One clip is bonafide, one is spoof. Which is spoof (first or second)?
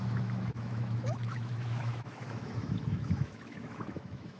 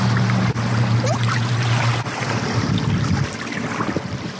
first